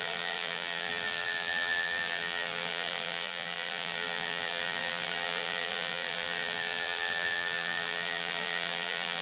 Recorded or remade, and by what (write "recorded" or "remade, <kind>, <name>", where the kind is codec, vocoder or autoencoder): remade, vocoder, BigVGAN v2